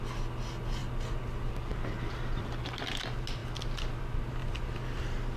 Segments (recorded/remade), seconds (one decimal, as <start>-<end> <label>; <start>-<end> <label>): 0.0-4.4 recorded; 4.4-5.4 remade